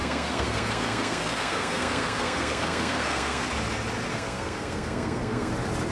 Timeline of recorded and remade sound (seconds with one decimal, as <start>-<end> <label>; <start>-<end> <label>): 0.0-3.5 remade; 3.5-4.1 recorded; 4.1-5.5 remade; 5.5-5.9 recorded

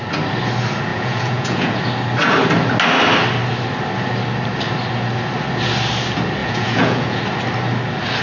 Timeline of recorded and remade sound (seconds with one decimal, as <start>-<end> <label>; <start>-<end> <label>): 0.0-0.9 recorded; 0.9-1.8 remade; 1.8-6.4 recorded; 6.4-7.2 remade; 7.2-8.2 recorded

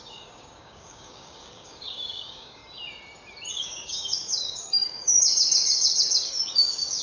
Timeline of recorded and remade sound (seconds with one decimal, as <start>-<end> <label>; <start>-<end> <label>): 0.0-2.6 remade; 2.6-3.5 recorded; 3.5-7.0 remade